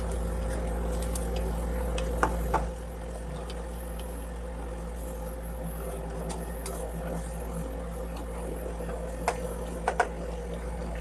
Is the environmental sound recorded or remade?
recorded